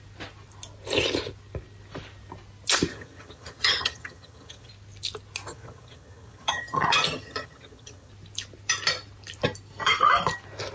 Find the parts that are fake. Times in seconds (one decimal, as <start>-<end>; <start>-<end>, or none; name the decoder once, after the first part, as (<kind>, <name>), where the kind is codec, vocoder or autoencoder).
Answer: 2.9-4.7 (vocoder, HiFi-GAN); 5.5-8.1